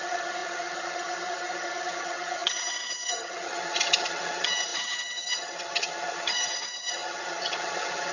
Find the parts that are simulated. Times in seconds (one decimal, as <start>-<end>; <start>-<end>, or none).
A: 0.0-8.1